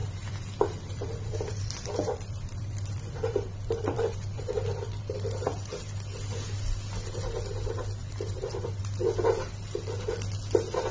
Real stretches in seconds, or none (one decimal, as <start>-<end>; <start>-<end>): 5.0-8.0; 8.8-10.9